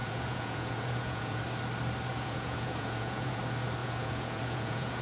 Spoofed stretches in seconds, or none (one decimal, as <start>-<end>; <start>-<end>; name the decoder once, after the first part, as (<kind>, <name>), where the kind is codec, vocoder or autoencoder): 0.0-1.4 (vocoder, Vocos); 2.1-3.4; 3.8-5.0